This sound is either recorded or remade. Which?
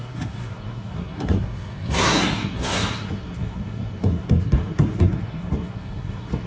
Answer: remade